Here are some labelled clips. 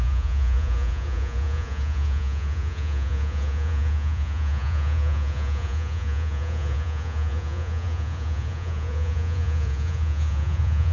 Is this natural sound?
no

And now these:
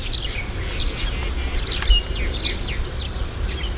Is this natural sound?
yes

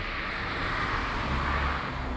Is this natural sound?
yes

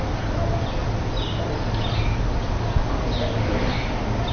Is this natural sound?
yes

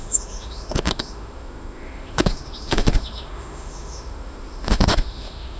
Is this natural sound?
no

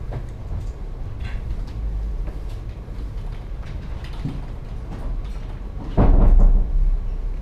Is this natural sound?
yes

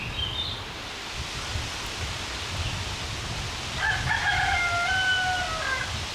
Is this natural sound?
yes